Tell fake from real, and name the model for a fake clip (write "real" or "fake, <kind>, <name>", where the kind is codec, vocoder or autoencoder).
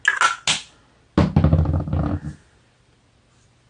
real